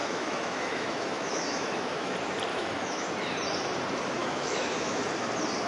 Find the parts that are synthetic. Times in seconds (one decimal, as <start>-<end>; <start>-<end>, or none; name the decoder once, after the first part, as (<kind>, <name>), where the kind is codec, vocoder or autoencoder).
0.0-2.1 (autoencoder, DAC-VAE); 2.5-3.1; 4.2-5.0